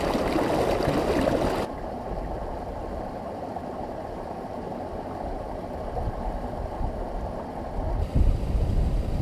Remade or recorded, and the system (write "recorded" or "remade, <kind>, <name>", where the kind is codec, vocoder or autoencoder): recorded